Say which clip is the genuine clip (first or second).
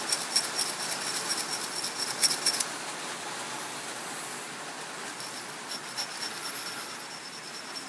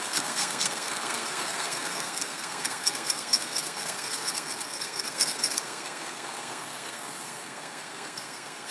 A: first